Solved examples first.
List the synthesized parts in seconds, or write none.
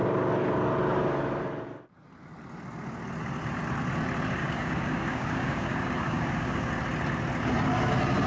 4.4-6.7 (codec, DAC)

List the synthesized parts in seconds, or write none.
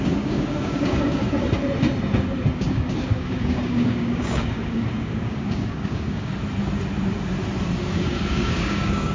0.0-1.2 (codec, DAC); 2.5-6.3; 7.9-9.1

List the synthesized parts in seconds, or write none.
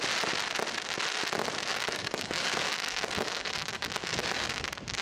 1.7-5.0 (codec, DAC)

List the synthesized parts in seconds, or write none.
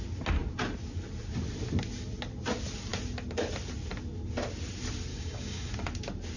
5.1-5.7 (codec, DAC)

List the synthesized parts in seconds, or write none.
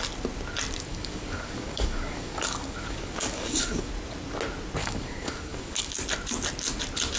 0.9-3.9 (codec, DAC); 4.8-5.9